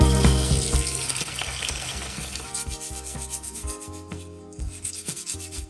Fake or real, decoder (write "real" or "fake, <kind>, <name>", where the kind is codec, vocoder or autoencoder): fake, codec, SNAC